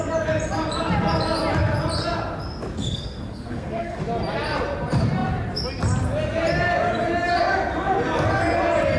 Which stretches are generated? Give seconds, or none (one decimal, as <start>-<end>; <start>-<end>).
2.8-4.0